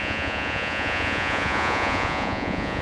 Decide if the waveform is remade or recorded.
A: remade